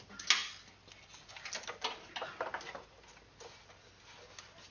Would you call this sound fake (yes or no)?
no